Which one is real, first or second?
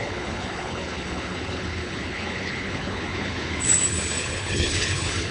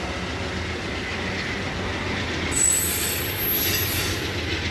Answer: second